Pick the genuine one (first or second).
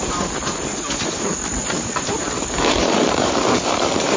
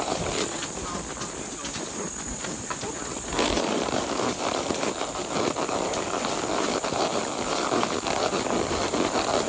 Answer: second